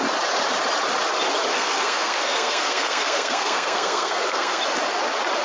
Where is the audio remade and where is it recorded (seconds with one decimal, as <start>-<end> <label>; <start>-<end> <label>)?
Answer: 0.0-1.5 recorded; 1.5-4.6 remade; 4.6-5.4 recorded